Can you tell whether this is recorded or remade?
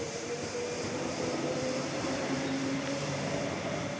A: remade